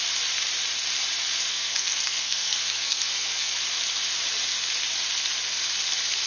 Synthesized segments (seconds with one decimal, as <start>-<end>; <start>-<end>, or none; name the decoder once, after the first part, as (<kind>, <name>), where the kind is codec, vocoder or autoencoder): 1.5-3.5 (codec, SNAC)